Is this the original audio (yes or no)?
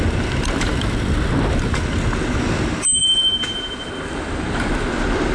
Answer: yes